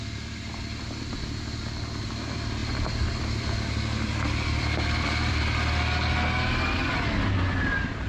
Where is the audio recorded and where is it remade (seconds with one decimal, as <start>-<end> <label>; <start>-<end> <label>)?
0.0-2.6 recorded; 2.6-5.4 remade; 5.4-8.1 recorded